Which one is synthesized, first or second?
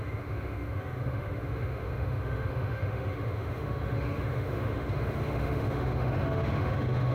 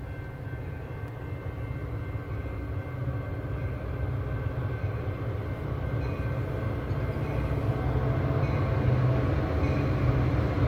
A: first